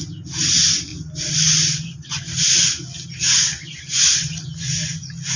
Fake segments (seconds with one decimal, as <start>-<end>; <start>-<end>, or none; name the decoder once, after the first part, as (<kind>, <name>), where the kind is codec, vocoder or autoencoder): none